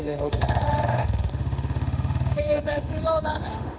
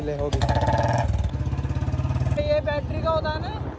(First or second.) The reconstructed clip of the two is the first